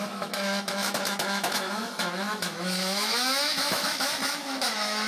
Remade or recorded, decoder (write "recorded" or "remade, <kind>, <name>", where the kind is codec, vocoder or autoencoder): remade, autoencoder, DAC-VAE